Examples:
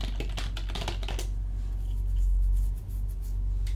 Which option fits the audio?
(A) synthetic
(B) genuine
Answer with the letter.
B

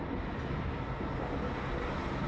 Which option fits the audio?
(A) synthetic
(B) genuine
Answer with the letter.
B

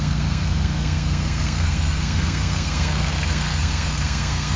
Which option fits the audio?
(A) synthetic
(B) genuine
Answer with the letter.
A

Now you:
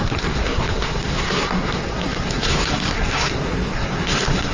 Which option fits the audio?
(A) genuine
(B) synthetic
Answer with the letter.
B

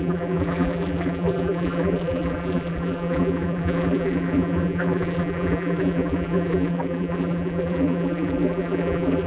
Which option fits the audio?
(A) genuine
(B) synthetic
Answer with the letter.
B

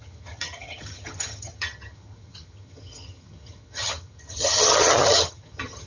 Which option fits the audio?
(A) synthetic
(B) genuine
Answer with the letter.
A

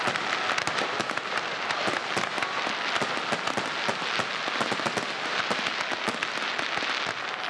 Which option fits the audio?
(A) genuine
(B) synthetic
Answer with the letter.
A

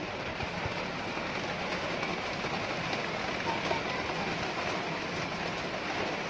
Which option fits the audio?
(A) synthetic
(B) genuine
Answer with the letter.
B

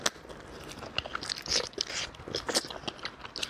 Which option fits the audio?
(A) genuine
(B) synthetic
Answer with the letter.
A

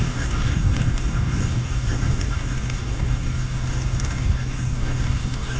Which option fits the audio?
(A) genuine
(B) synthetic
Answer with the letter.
B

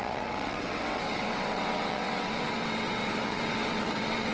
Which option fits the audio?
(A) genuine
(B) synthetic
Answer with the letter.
B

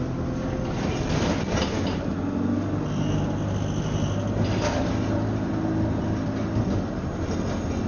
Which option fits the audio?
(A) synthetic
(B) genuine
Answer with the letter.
B